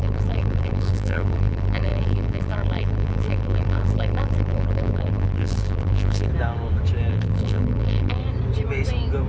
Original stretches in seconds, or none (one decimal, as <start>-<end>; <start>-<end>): 6.3-7.1; 8.2-9.3